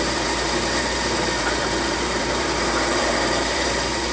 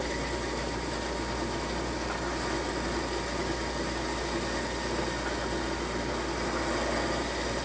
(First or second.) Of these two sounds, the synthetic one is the first